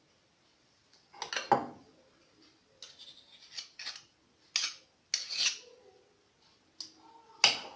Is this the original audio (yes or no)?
yes